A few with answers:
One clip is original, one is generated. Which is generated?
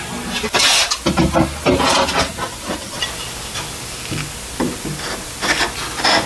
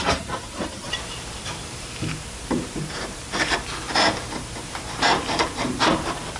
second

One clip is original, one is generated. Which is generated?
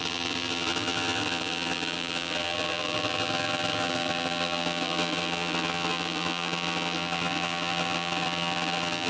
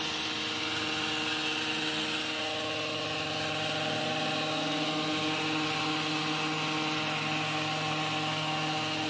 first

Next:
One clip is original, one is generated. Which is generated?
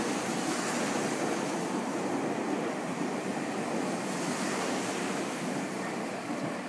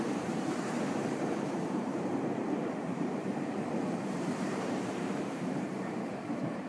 second